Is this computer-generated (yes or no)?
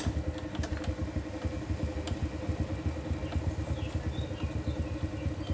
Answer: no